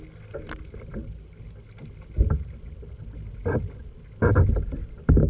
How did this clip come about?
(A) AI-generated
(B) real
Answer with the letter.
B